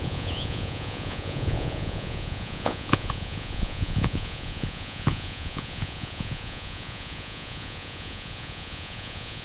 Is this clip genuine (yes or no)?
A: no